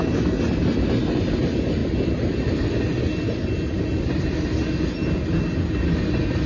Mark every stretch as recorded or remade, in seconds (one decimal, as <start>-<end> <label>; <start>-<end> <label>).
0.0-6.5 recorded